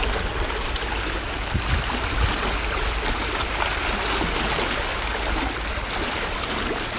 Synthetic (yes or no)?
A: no